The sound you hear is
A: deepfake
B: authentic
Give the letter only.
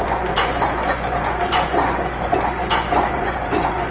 A